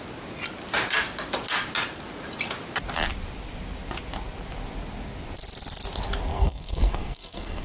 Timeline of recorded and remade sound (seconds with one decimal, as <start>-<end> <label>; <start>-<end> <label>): 0.0-6.3 recorded; 6.3-7.6 remade